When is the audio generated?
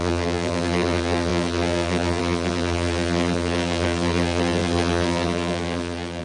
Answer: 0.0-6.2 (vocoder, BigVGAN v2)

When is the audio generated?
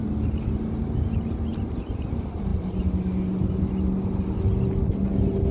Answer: 1.5-2.0 (vocoder, BigVGAN v2)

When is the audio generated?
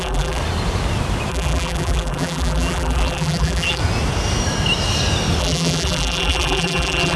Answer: 0.0-0.4 (vocoder, BigVGAN v2); 1.3-3.8; 5.4-7.2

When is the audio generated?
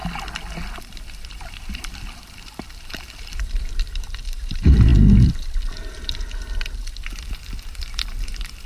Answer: 0.6-4.9 (vocoder, BigVGAN v2); 7.1-8.7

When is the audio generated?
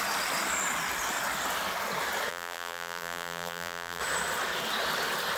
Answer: 2.3-4.0 (vocoder, BigVGAN v2)